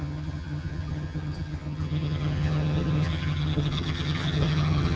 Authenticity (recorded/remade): remade